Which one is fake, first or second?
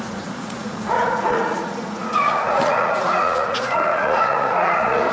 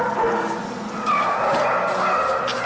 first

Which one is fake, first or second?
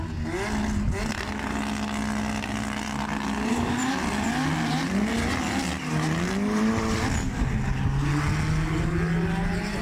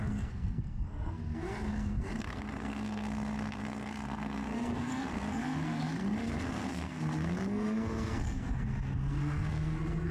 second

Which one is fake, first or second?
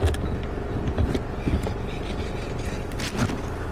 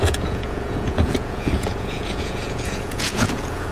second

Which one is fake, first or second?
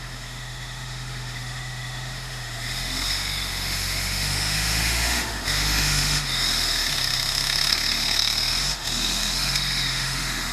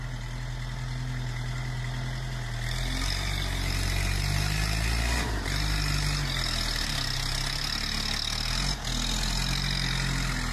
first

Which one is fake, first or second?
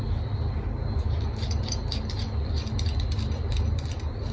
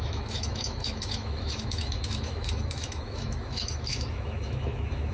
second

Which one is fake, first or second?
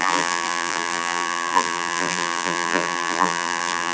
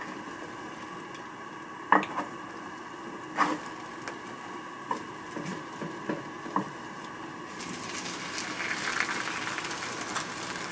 first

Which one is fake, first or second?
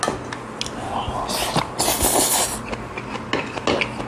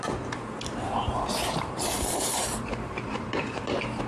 second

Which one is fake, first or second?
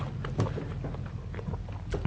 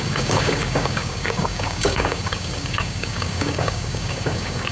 second